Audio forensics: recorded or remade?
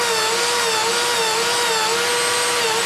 recorded